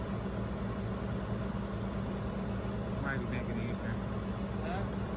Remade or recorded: recorded